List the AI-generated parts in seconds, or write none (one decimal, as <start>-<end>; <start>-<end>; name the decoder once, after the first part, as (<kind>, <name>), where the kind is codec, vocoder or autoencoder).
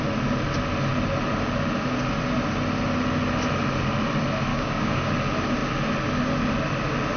4.5-5.1 (codec, DAC)